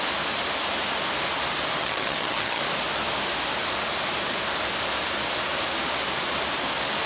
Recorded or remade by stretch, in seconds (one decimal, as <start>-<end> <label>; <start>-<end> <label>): 0.0-1.8 recorded; 1.8-2.6 remade; 2.6-7.1 recorded